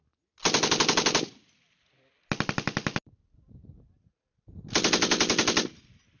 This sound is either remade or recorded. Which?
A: recorded